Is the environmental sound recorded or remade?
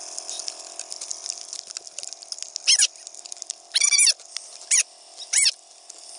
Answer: recorded